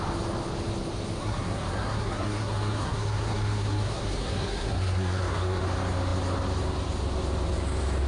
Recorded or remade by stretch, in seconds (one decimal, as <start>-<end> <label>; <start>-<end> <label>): 0.0-1.2 recorded; 1.2-5.6 remade; 5.6-8.1 recorded